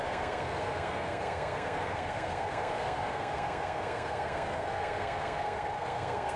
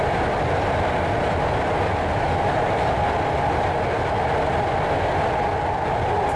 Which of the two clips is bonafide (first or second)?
second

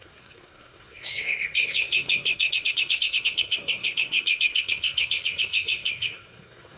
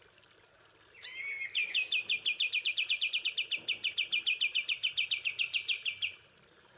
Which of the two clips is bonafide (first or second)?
second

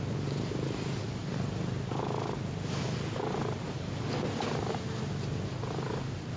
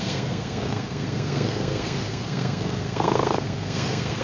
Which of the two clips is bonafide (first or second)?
first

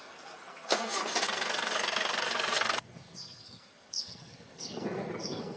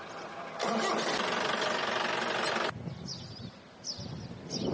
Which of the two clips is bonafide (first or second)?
second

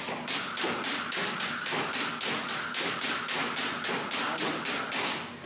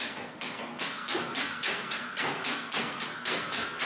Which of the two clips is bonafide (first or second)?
first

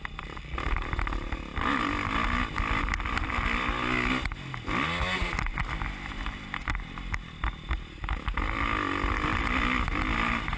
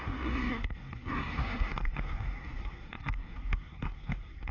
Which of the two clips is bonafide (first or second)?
first